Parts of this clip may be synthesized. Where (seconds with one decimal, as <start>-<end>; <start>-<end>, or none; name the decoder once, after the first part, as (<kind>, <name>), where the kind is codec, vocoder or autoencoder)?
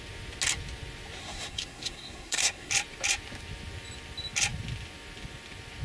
1.2-2.7 (codec, SNAC)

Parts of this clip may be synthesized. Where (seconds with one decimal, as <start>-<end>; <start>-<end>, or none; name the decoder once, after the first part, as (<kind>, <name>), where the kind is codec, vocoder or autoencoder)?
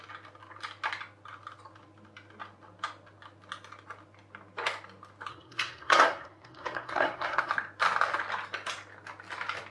5.3-7.5 (codec, SNAC)